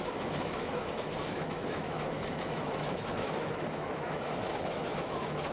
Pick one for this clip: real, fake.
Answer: fake